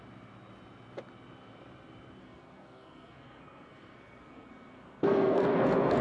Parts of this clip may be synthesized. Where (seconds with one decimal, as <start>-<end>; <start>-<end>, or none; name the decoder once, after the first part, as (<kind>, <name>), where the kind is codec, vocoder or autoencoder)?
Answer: 2.2-6.0 (codec, SNAC)